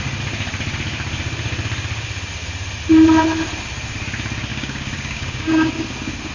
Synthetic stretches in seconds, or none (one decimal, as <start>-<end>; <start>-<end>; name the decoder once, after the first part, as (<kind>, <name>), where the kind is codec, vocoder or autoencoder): 4.5-5.7 (codec, DAC)